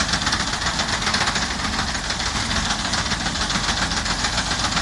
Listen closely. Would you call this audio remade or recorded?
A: recorded